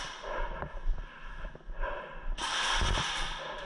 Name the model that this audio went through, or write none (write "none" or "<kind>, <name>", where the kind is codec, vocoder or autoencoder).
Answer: none